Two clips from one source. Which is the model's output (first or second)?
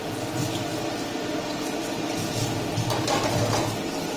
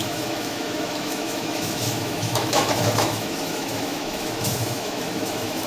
second